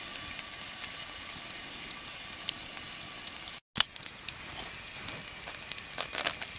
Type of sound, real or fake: real